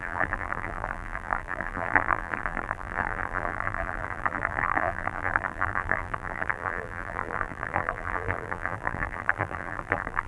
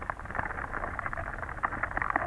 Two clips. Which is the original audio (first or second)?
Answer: second